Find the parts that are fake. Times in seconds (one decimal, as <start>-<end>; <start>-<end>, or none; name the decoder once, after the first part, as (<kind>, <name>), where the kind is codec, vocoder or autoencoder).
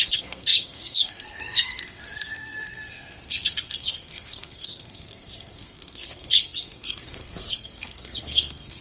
0.0-8.8 (codec, SNAC)